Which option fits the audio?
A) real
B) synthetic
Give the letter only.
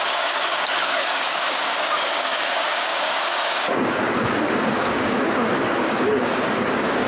B